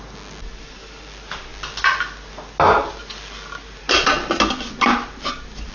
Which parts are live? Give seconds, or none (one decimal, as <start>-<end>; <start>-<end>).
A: 0.0-5.7